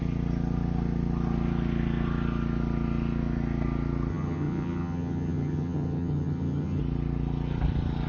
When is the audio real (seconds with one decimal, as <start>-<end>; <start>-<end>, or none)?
0.0-4.1; 6.8-8.1